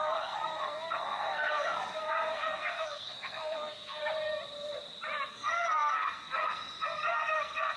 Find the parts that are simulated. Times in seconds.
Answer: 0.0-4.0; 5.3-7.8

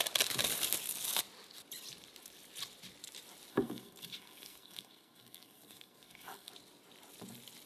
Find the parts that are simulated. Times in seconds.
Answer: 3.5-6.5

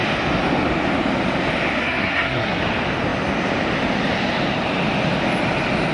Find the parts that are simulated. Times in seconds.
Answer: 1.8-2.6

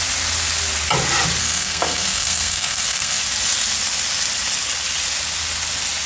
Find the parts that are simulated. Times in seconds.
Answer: 1.4-3.2

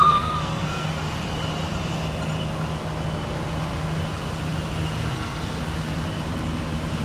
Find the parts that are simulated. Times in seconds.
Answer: 0.0-0.9; 5.1-5.6

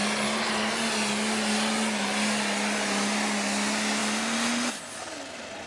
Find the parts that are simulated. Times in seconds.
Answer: none

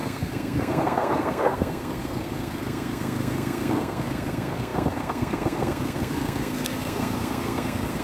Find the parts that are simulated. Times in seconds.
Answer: 0.0-8.0